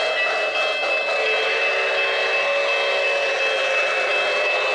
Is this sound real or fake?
real